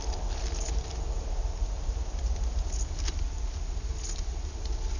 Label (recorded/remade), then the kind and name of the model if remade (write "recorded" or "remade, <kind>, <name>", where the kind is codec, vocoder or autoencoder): recorded